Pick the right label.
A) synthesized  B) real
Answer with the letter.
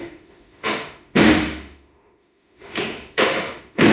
A